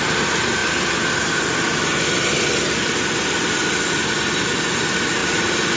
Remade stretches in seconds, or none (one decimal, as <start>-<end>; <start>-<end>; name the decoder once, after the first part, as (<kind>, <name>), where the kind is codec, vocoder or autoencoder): none